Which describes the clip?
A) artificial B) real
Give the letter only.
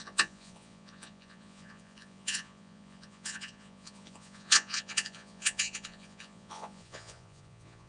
A